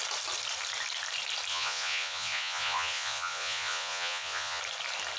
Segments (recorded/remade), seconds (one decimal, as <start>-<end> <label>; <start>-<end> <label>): 0.0-1.5 recorded; 1.5-4.6 remade; 4.6-5.2 recorded